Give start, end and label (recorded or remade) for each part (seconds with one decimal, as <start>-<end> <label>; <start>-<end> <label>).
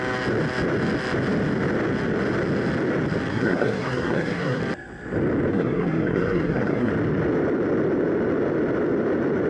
0.0-3.3 recorded; 3.3-4.6 remade; 4.6-5.5 recorded; 5.5-6.9 remade; 6.9-9.5 recorded